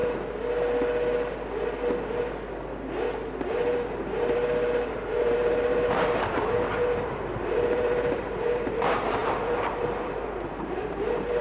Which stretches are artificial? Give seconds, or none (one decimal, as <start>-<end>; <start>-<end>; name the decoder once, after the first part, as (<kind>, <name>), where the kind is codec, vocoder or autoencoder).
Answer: 3.4-4.4 (vocoder, BigVGAN v2); 4.9-11.4